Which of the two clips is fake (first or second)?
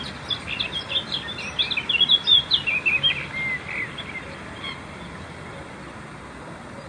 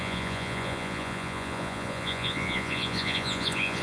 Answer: second